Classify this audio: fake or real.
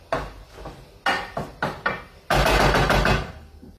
real